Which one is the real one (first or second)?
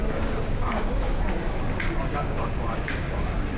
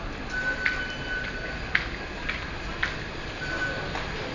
second